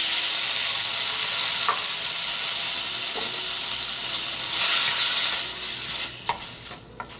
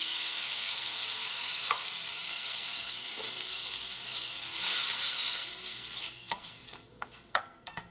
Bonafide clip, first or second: first